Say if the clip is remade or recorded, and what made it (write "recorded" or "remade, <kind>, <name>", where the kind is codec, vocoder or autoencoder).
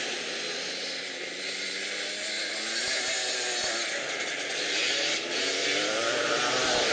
recorded